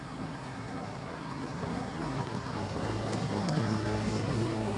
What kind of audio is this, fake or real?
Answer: fake